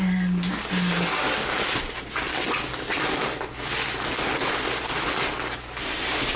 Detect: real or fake real